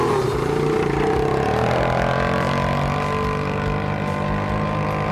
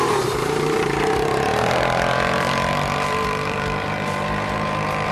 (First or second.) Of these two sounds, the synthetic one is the second